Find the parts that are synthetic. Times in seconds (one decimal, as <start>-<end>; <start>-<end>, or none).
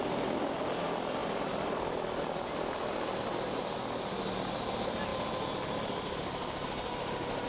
none